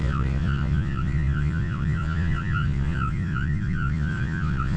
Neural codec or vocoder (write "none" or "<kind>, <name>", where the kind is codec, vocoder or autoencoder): vocoder, Vocos